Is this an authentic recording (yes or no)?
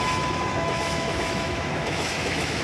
no